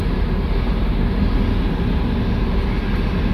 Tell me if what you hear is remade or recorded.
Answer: recorded